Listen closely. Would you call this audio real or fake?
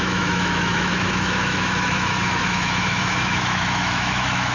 fake